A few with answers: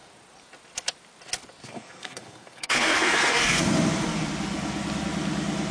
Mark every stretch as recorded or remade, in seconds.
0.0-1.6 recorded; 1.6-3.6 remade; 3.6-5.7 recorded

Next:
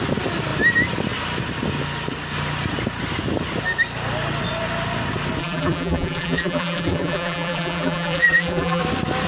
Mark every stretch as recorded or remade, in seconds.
0.0-5.4 recorded; 5.4-8.8 remade; 8.8-9.3 recorded

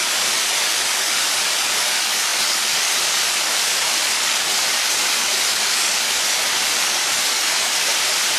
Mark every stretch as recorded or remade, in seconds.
0.0-7.9 remade; 7.9-8.4 recorded

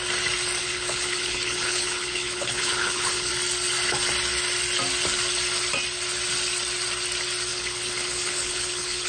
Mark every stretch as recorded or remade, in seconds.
0.0-0.6 recorded; 0.6-3.3 remade; 3.3-7.5 recorded; 7.5-9.1 remade

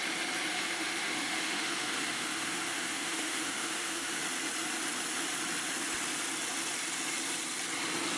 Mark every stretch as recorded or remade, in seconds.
0.0-0.5 recorded; 0.5-4.2 remade; 4.2-8.2 recorded

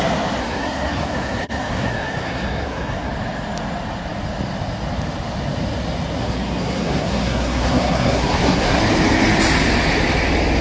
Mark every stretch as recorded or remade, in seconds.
0.0-0.4 recorded; 0.4-3.1 remade; 3.1-6.2 recorded; 6.2-8.8 remade; 8.8-10.6 recorded